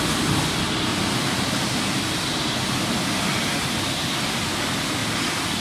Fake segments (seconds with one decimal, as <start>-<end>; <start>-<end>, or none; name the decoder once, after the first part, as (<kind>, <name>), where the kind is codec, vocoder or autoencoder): 0.9-4.2 (vocoder, BigVGAN v2)